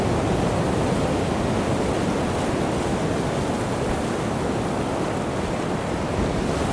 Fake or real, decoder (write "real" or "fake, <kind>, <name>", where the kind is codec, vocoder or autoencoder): real